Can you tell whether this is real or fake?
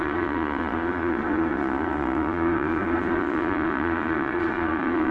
fake